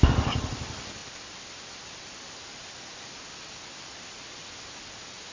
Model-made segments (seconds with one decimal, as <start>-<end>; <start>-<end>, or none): none